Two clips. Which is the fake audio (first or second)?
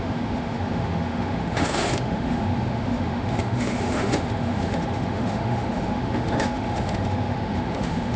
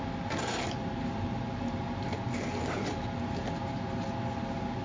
first